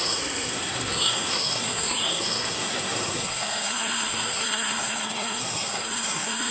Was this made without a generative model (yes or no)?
no